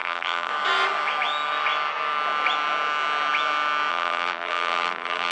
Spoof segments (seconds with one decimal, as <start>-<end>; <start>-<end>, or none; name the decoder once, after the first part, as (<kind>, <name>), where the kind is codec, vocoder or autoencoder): 0.0-0.5 (vocoder, BigVGAN v2); 3.9-5.3